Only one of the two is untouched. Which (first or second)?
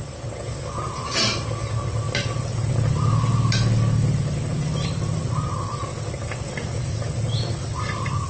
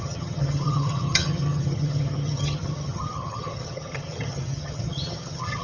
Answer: first